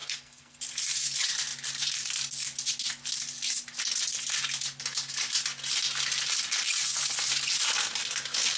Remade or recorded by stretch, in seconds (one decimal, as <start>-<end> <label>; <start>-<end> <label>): 0.0-0.6 remade; 0.6-8.6 recorded